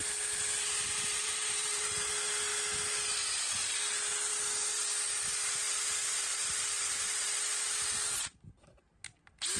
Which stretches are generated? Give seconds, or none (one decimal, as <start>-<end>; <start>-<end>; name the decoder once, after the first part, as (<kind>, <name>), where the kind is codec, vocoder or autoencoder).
1.1-2.1 (vocoder, BigVGAN v2); 6.3-7.3